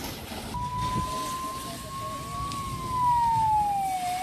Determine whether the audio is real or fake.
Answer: real